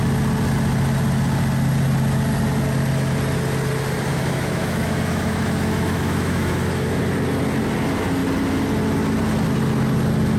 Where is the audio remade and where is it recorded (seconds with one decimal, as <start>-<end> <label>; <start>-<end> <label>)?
0.0-4.1 recorded; 4.1-7.0 remade; 7.0-10.4 recorded